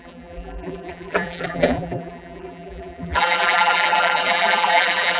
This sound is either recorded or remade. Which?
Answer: remade